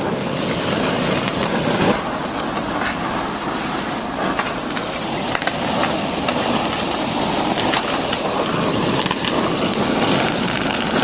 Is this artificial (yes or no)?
no